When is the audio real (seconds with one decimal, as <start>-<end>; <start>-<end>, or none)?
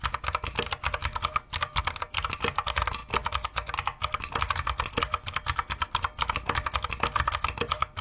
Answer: 0.0-8.0